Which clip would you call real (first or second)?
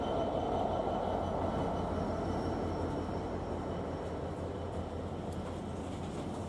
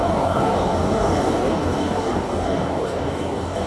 first